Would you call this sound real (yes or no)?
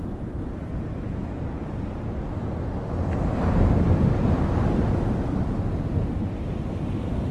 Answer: yes